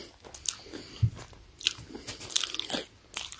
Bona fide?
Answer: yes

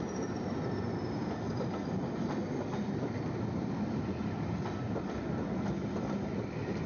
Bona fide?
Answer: yes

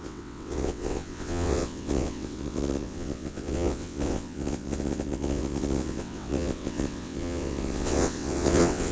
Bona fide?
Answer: no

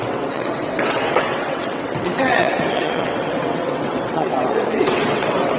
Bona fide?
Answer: no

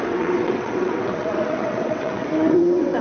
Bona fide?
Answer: no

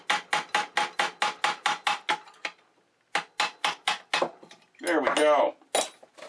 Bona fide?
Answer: yes